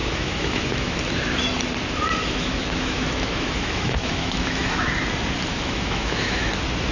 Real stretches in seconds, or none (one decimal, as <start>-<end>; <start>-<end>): 1.0-2.2; 4.9-5.5; 6.5-6.9